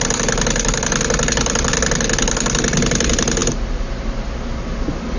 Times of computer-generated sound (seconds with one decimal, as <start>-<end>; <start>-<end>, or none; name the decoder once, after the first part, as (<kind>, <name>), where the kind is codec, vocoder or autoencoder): none